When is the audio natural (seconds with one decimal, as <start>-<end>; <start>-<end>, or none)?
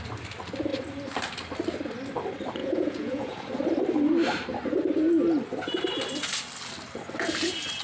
0.0-2.6; 3.5-7.8